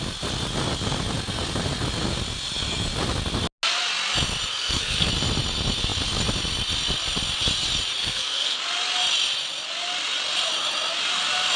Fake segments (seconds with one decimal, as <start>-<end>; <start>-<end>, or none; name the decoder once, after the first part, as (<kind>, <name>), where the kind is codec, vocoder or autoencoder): 4.5-5.1 (codec, SNAC); 8.0-8.6